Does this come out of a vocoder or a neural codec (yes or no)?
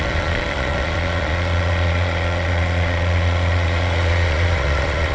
yes